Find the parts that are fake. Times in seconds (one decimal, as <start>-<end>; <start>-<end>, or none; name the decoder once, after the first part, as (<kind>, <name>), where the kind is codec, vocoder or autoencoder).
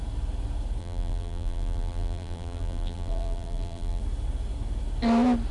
0.8-4.0 (vocoder, BigVGAN v2)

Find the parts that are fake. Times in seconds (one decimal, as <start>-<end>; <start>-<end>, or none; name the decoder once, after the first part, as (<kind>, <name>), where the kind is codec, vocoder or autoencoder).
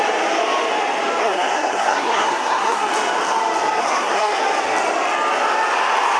1.2-2.9 (codec, SNAC); 3.8-4.4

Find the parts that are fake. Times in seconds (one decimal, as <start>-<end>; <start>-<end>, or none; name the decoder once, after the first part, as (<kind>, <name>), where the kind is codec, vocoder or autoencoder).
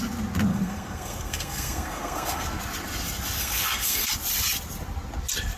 0.5-2.6 (codec, SNAC); 3.4-4.1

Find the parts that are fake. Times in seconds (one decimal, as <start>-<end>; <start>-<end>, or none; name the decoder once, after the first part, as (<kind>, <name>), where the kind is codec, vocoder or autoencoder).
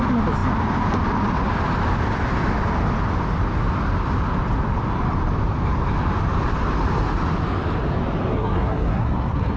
8.3-9.6 (codec, SNAC)